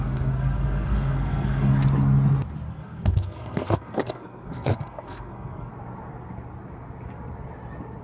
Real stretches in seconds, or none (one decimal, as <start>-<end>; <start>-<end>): 1.7-2.7; 5.7-8.0